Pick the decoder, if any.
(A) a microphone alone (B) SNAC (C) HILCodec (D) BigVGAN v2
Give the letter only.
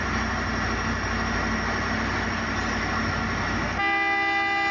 A